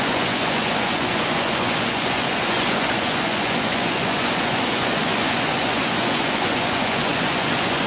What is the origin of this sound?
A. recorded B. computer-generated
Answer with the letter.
B